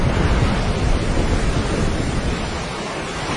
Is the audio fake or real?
real